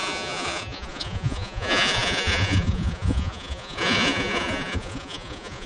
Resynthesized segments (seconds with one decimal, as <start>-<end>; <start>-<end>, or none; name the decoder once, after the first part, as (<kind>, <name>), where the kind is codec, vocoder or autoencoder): 0.0-5.7 (vocoder, Vocos)